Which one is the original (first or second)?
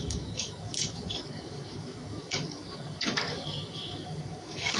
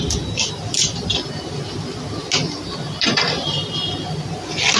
second